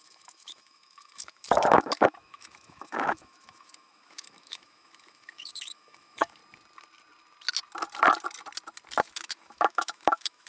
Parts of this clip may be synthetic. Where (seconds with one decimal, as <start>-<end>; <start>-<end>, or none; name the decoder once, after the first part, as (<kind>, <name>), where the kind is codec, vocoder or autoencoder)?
0.0-6.4 (autoencoder, DAC-VAE); 9.0-10.5